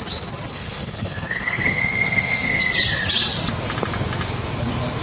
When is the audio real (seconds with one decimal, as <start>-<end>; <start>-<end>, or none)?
0.0-0.5; 2.7-5.0

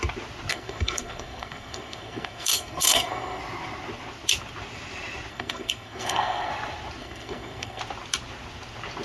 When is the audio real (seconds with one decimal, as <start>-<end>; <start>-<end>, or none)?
0.0-0.5; 3.4-5.3; 6.5-7.0; 7.8-9.0